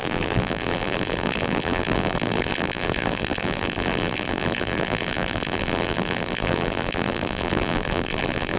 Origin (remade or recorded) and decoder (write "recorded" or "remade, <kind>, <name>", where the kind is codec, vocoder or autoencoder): remade, vocoder, BigVGAN v2